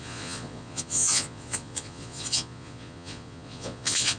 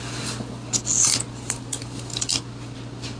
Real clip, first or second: second